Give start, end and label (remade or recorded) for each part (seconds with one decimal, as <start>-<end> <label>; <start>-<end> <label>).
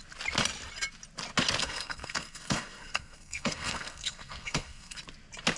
0.0-1.6 recorded; 1.6-5.0 remade; 5.0-5.6 recorded